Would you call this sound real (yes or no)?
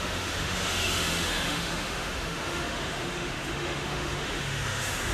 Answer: no